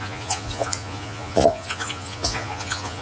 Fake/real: fake